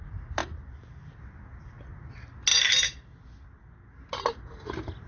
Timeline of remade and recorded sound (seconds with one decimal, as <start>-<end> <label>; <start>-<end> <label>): 0.0-5.1 recorded